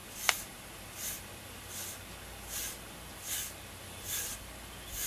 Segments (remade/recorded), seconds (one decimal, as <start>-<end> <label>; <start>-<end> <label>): 0.0-5.1 recorded

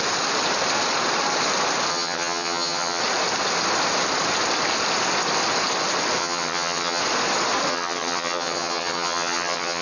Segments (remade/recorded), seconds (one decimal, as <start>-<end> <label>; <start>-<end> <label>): 0.0-1.9 recorded; 1.9-3.0 remade; 3.0-6.2 recorded; 6.2-7.0 remade; 7.0-7.7 recorded; 7.7-9.8 remade